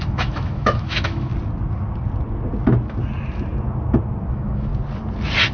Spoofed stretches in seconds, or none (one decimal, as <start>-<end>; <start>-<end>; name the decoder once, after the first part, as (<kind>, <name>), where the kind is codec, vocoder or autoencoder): 0.0-1.3 (autoencoder, DAC-VAE); 4.3-4.7